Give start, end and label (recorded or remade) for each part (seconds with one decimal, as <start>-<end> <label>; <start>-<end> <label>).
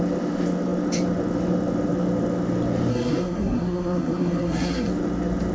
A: 0.0-2.9 recorded; 2.9-4.9 remade; 4.9-5.5 recorded